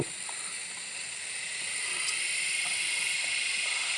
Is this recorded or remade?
recorded